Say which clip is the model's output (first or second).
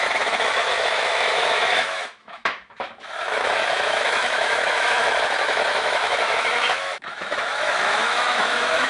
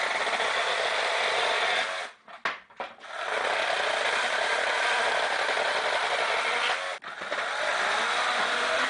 first